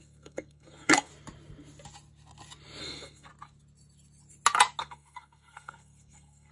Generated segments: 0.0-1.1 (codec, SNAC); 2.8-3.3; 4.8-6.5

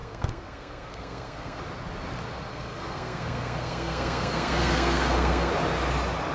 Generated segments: 0.0-1.6 (codec, SNAC); 2.5-5.5

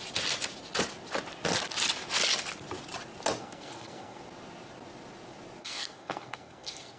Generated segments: 3.4-4.2 (codec, SNAC); 5.6-7.0

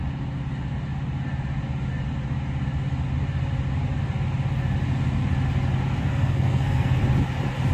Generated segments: 6.0-7.0 (codec, SNAC)

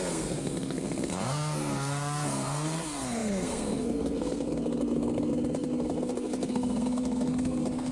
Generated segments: 0.0-7.9 (codec, SNAC)